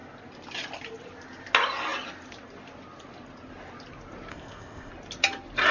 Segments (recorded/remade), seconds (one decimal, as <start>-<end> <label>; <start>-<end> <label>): 0.0-4.3 recorded; 4.3-4.9 remade; 4.9-5.7 recorded